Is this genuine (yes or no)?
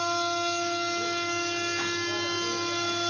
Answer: yes